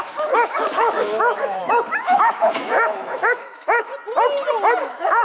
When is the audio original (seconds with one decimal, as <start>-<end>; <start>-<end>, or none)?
3.9-4.8